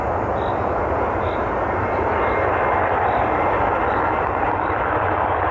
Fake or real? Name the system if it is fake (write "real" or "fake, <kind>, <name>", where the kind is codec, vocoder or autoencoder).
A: real